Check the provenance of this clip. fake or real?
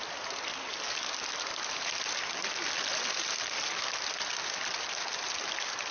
real